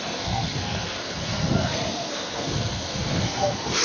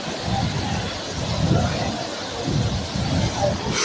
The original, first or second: second